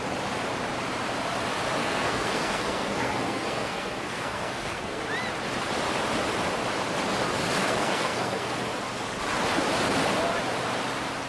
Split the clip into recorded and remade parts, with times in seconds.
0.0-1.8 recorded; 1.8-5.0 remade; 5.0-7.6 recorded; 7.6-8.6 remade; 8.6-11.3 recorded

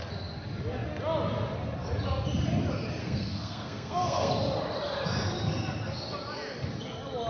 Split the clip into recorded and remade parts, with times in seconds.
0.0-3.0 recorded; 3.0-4.3 remade; 4.3-7.3 recorded

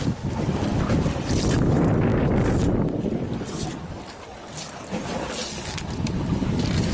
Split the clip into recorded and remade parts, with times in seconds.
0.0-6.9 recorded